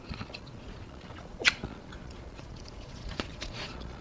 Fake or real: fake